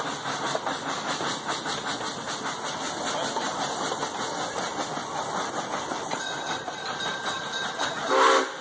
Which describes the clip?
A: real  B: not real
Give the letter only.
A